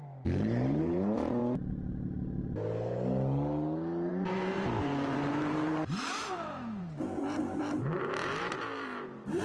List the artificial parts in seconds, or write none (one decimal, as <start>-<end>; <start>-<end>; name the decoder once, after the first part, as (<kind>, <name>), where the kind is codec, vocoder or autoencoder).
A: 0.0-1.4 (vocoder, BigVGAN v2); 4.1-9.4